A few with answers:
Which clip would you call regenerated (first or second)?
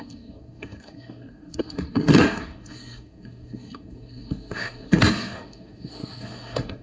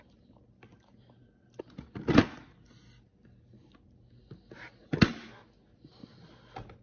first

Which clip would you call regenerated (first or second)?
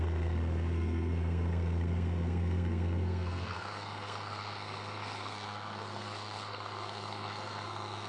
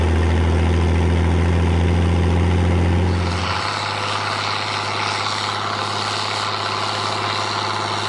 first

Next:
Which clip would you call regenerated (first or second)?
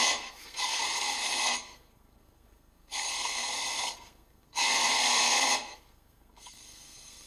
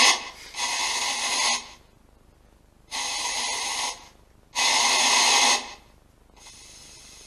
first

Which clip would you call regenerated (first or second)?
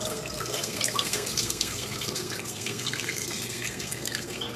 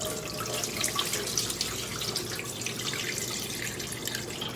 first